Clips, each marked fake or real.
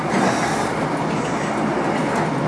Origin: real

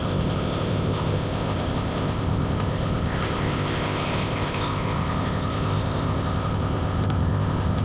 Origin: fake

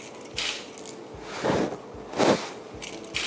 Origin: real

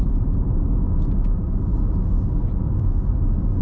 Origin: real